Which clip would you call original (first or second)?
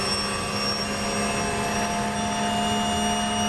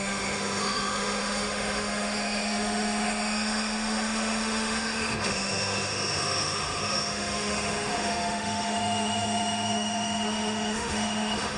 first